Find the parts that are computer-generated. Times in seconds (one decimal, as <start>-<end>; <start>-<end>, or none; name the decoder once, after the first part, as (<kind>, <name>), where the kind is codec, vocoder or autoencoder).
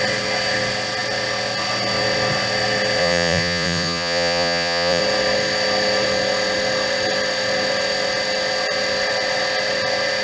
3.0-5.0 (vocoder, Vocos)